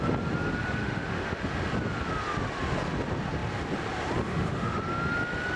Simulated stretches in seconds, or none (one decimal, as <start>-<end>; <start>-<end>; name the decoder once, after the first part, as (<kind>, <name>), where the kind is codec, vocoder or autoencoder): 0.8-1.4 (autoencoder, DAC-VAE); 4.3-4.8